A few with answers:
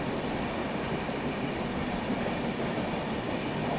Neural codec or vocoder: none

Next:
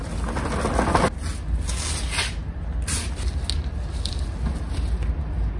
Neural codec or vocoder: none